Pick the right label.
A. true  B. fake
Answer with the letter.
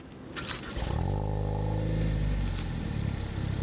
A